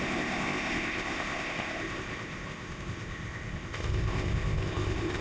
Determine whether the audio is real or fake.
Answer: fake